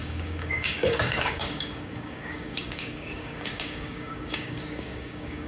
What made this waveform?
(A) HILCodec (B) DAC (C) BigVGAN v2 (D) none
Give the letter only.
B